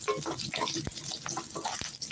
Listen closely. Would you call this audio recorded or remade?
recorded